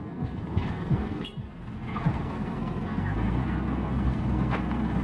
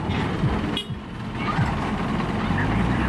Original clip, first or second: second